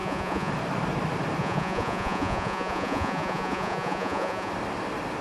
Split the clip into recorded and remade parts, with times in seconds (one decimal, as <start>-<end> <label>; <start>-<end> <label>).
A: 0.0-0.5 remade; 0.5-1.4 recorded; 1.4-4.5 remade; 4.5-5.2 recorded

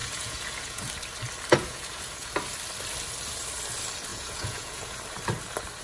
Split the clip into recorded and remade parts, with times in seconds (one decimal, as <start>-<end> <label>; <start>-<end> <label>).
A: 0.0-0.9 remade; 0.9-1.6 recorded; 1.6-2.3 remade; 2.3-4.1 recorded; 4.1-5.0 remade; 5.0-5.8 recorded

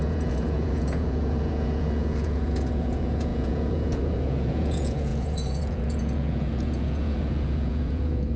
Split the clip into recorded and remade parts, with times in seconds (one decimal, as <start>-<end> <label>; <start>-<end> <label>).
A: 0.0-8.4 remade

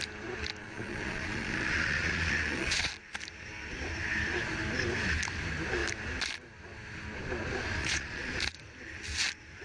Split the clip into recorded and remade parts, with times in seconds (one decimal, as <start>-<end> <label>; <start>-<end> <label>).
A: 0.0-0.6 recorded; 0.6-2.9 remade; 2.9-7.8 recorded; 7.8-8.3 remade; 8.3-9.6 recorded